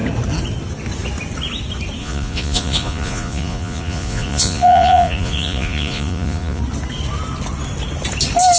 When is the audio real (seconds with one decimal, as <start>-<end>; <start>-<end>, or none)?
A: 0.0-2.0; 6.6-8.6